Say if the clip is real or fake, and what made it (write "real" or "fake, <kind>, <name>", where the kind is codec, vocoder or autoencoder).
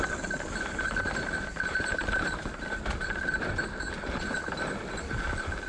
real